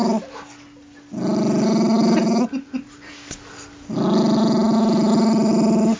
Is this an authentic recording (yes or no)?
yes